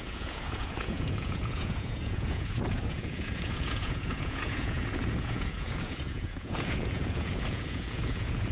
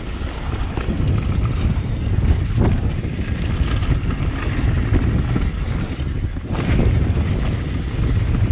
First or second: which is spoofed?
first